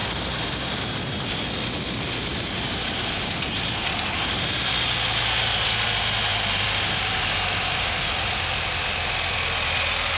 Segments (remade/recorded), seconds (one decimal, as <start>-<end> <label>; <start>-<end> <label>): 0.0-1.1 remade; 1.1-2.3 recorded; 2.3-4.7 remade; 4.7-6.3 recorded; 6.3-8.3 remade; 8.3-10.2 recorded